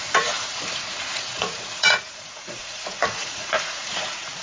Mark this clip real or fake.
fake